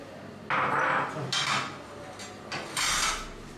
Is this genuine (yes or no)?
yes